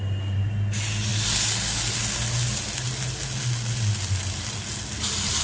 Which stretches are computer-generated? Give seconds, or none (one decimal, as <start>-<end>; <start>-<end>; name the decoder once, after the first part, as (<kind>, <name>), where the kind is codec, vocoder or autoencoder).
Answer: none